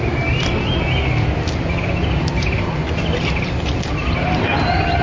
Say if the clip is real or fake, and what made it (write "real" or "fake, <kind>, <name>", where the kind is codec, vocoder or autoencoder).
real